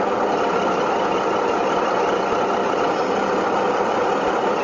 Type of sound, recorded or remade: recorded